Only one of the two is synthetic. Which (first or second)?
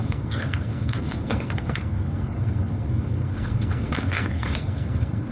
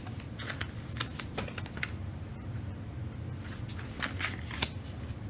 first